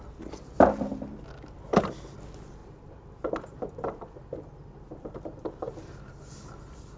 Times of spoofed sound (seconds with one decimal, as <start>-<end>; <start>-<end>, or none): 2.6-6.3

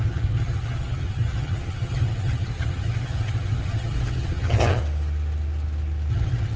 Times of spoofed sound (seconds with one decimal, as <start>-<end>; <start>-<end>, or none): 0.0-4.8; 6.1-6.6

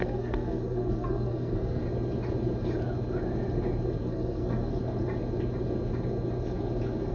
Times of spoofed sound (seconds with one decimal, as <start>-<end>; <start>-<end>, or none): 0.0-1.8; 4.0-4.8

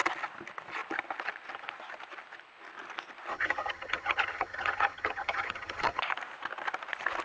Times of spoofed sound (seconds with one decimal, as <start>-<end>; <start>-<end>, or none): 3.3-6.0

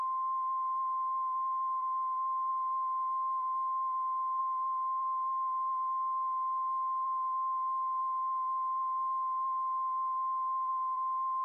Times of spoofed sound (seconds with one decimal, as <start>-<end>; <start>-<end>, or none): 0.0-11.4

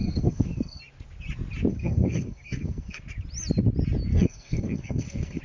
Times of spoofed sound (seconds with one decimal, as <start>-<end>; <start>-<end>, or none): 0.0-0.8; 1.7-3.0; 4.1-5.4

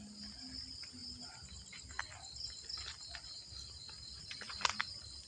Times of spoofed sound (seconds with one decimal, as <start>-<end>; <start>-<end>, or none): none